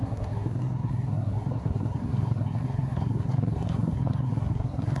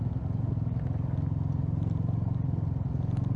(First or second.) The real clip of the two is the second